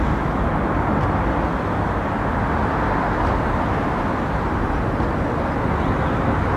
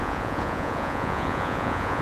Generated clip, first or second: second